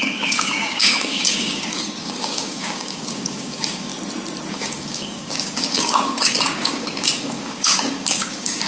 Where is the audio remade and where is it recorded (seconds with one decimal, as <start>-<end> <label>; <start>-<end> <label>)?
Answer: 0.0-3.9 remade; 3.9-4.5 recorded; 4.5-8.7 remade